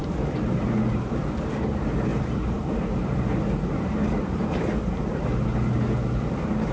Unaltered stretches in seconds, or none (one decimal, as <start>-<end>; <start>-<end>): 0.0-2.1; 5.2-6.7